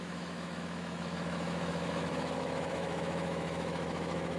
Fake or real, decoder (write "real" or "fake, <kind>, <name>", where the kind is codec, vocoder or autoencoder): fake, autoencoder, DAC-VAE